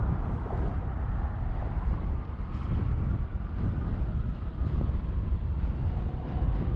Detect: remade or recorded recorded